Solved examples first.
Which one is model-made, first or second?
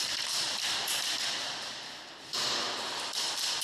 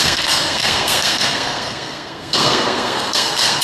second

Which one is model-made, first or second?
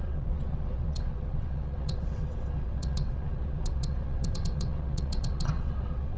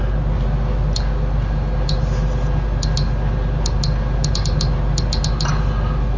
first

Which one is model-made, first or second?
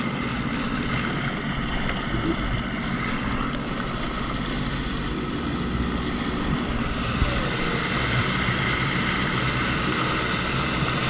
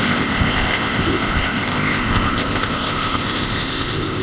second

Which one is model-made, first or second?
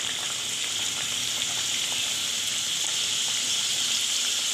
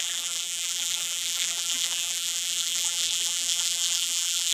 second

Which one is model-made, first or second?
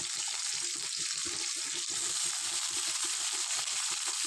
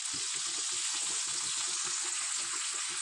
second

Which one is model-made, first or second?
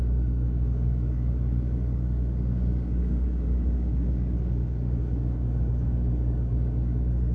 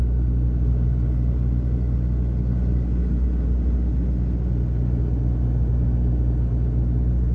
first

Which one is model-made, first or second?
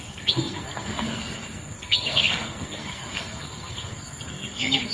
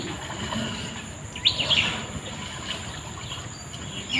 first